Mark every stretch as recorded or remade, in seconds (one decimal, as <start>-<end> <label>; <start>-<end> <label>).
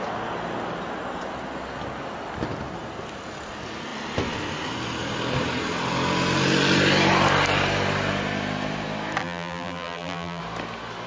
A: 0.0-9.2 recorded; 9.2-10.4 remade; 10.4-11.1 recorded